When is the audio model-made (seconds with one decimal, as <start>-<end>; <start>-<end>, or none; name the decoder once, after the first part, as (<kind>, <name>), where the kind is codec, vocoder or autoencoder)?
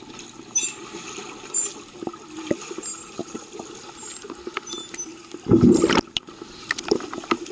3.2-3.7 (vocoder, BigVGAN v2)